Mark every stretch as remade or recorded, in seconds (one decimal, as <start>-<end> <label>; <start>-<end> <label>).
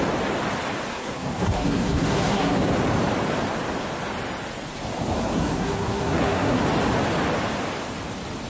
0.0-0.9 recorded; 0.9-2.7 remade; 2.7-5.2 recorded; 5.2-6.6 remade; 6.6-8.5 recorded